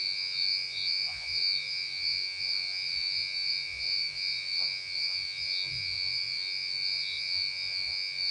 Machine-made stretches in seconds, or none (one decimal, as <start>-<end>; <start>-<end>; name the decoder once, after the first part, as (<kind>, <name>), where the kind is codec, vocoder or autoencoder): 0.0-8.3 (vocoder, Vocos)